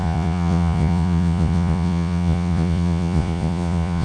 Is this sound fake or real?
fake